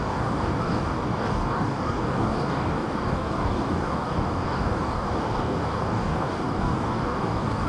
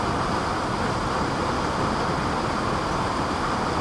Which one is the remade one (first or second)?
first